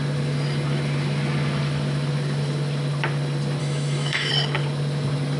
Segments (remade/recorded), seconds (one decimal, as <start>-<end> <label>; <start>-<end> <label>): 0.0-3.6 recorded; 3.6-4.3 remade; 4.3-5.4 recorded

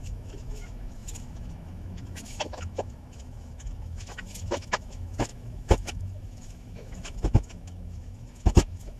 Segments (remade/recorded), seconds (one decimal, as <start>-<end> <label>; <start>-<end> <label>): 0.0-9.0 remade